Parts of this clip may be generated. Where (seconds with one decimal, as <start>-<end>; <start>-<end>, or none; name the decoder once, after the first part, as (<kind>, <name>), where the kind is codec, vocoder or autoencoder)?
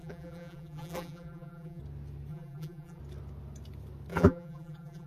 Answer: 0.0-1.8 (vocoder, BigVGAN v2); 2.3-3.0; 4.1-5.1